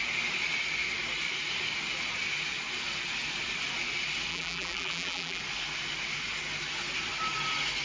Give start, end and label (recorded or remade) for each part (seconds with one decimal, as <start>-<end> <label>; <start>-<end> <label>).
0.0-4.3 recorded; 4.3-5.4 remade; 5.4-7.8 recorded